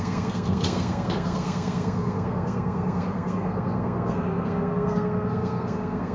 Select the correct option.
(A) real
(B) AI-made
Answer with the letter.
B